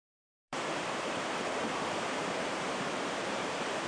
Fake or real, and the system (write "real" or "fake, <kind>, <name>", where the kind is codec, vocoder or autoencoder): fake, vocoder, BigVGAN v2